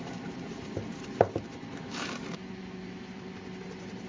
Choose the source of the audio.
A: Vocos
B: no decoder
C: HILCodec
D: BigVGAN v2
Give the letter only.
D